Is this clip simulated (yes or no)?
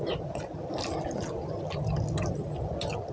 no